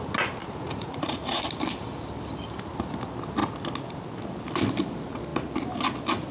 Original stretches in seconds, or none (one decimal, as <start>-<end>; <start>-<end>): 0.0-0.4; 1.4-6.3